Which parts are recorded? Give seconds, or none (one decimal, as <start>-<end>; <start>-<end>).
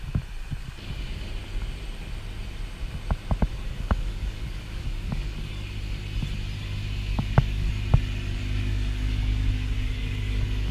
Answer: 0.0-0.6; 1.4-3.5; 5.7-7.1; 7.7-8.3